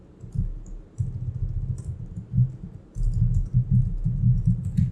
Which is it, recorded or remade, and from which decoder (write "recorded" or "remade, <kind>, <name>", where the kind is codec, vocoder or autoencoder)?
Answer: recorded